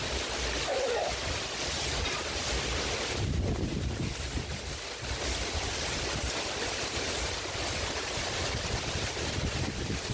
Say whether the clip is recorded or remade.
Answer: recorded